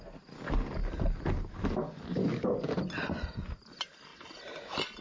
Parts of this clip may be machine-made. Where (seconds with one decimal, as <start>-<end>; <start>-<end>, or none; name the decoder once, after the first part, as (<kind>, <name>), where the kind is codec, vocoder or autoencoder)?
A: none